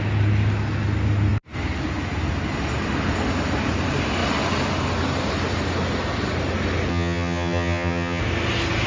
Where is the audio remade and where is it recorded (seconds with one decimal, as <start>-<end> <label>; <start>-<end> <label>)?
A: 0.0-6.9 recorded; 6.9-8.2 remade; 8.2-8.9 recorded